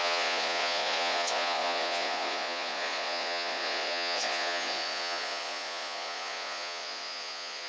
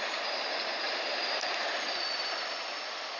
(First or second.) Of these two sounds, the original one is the second